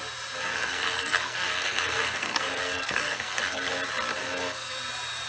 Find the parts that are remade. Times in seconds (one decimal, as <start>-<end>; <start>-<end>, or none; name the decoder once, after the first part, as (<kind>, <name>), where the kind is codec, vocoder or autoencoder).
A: 0.5-3.7 (codec, SNAC); 4.2-4.7